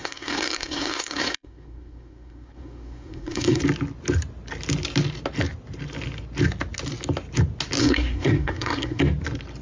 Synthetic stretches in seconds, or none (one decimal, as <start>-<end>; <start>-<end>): 0.0-3.6; 7.8-9.0